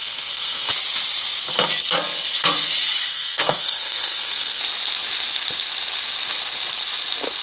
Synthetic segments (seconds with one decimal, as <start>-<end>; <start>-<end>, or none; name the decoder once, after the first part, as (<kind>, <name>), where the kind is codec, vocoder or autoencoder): 0.0-0.7 (codec, SNAC); 3.1-4.6